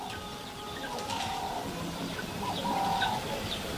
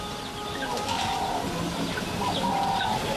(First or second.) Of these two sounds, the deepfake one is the first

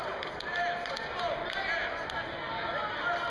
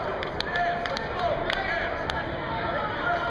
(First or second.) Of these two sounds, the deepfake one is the second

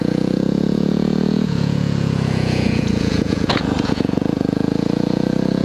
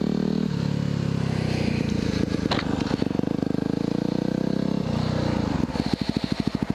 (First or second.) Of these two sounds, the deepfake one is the first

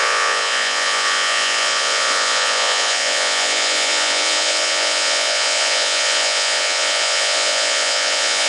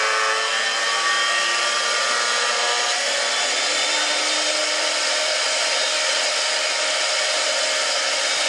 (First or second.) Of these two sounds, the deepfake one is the first